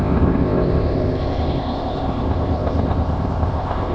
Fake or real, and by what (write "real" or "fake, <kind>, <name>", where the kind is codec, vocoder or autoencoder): fake, codec, ZipCodec